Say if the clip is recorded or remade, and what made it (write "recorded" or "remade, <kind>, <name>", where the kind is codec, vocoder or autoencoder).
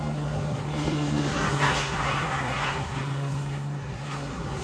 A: remade, codec, SNAC